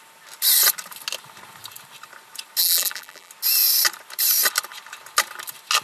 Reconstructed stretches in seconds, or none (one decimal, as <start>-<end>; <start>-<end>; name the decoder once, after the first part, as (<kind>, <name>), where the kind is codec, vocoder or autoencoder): 2.6-3.3 (vocoder, BigVGAN v2)